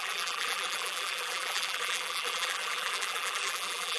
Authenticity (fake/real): fake